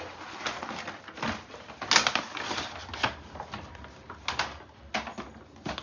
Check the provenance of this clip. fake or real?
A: real